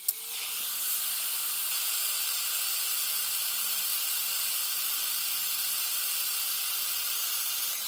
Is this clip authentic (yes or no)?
yes